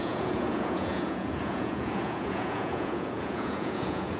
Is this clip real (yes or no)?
no